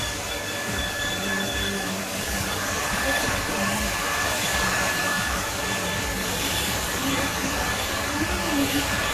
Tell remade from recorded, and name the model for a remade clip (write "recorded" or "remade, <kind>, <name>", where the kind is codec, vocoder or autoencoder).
remade, codec, DAC